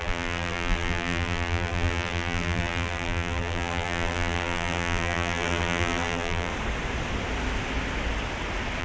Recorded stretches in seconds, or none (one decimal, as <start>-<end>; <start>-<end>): 6.5-8.8